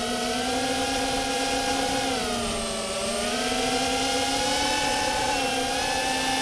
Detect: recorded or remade recorded